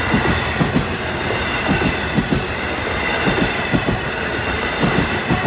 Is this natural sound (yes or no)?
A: yes